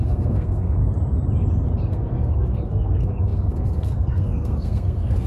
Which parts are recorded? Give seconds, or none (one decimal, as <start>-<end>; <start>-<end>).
0.8-1.9